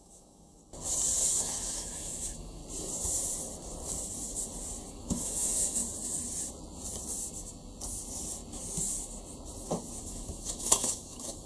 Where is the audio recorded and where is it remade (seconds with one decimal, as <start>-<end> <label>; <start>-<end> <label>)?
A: 0.0-0.6 remade; 0.6-1.2 recorded; 1.2-2.6 remade; 2.6-4.9 recorded; 4.9-5.8 remade; 5.8-10.0 recorded; 10.0-11.5 remade